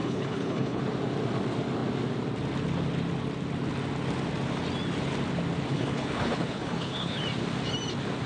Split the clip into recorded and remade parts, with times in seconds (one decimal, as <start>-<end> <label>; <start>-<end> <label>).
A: 0.0-0.8 remade; 0.8-5.7 recorded; 5.7-7.2 remade; 7.2-8.3 recorded